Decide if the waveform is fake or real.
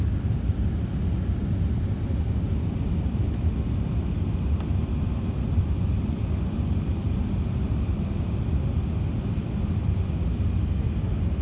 real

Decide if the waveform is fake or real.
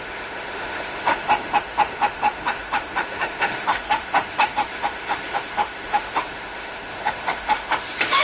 fake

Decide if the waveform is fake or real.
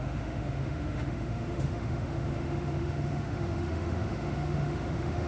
fake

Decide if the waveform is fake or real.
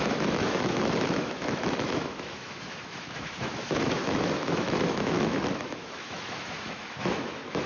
fake